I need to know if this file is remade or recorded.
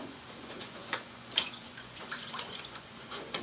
remade